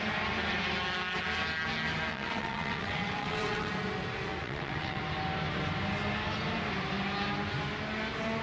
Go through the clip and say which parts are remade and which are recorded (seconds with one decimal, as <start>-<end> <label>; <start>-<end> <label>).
0.0-2.1 recorded; 2.1-3.7 remade; 3.7-4.4 recorded; 4.4-5.0 remade; 5.0-8.4 recorded